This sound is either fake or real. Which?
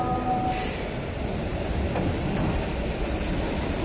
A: real